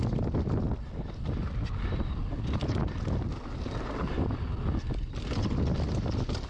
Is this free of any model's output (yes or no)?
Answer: yes